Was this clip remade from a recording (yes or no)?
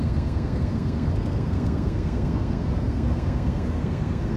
yes